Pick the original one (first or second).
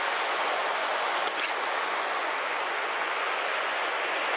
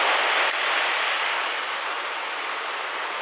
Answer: second